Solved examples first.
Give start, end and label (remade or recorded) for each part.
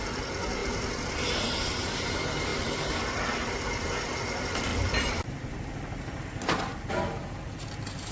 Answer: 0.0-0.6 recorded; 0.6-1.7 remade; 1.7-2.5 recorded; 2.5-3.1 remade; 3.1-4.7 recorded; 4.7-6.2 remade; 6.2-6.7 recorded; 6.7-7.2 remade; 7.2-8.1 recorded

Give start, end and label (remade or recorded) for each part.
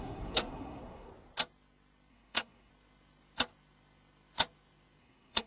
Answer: 0.0-1.1 remade; 1.1-2.1 recorded; 2.1-2.7 remade; 2.7-5.0 recorded; 5.0-5.5 remade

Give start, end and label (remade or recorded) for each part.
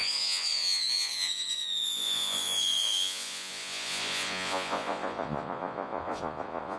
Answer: 0.0-6.8 remade